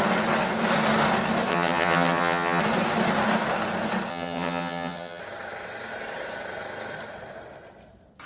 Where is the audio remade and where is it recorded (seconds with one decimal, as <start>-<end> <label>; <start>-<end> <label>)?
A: 0.0-1.5 recorded; 1.5-2.6 remade; 2.6-4.1 recorded; 4.1-5.2 remade; 5.2-8.3 recorded

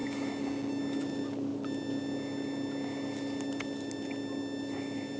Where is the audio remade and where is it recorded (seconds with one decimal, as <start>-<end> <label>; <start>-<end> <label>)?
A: 0.0-5.2 recorded

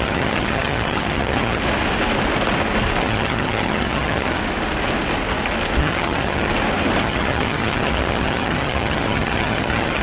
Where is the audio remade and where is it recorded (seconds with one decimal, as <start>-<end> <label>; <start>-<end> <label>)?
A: 0.0-1.6 remade; 1.6-3.0 recorded; 3.0-4.4 remade; 4.4-5.8 recorded; 5.8-6.5 remade; 6.5-7.0 recorded; 7.0-10.0 remade